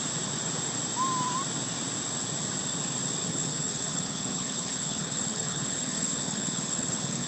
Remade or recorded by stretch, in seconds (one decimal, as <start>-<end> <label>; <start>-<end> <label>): 0.0-3.2 recorded; 3.2-7.3 remade